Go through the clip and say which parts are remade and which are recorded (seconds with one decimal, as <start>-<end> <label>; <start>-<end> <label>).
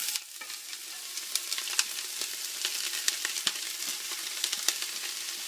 0.0-3.9 recorded; 3.9-4.5 remade; 4.5-5.5 recorded